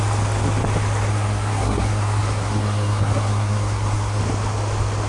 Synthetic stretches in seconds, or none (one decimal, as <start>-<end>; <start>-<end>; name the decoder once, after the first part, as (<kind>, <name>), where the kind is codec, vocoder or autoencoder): 1.1-4.2 (codec, SNAC)